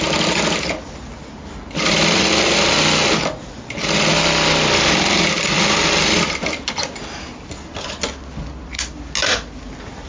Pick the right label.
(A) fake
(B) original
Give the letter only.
B